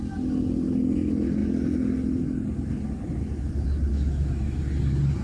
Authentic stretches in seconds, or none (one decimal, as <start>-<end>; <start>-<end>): 0.0-3.9; 4.6-5.2